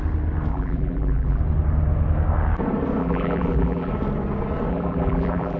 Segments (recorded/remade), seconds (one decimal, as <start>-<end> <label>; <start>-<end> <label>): 0.0-0.5 recorded; 0.5-1.4 remade; 1.4-3.0 recorded; 3.0-3.9 remade; 3.9-4.7 recorded; 4.7-5.6 remade